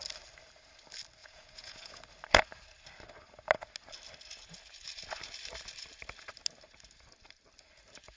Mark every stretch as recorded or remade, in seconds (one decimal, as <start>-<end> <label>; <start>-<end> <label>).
0.0-1.2 recorded; 1.2-2.0 remade; 2.0-8.2 recorded